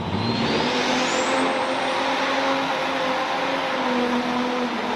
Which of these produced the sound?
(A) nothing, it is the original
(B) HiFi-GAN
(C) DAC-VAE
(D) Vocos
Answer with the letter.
A